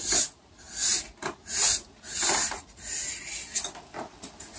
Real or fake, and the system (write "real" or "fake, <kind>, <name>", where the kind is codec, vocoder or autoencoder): real